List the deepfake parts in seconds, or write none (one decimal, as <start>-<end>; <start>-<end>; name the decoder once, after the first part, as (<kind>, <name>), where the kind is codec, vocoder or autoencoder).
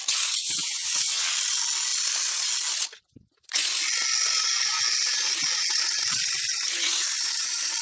0.4-1.3 (vocoder, WaveNeXt)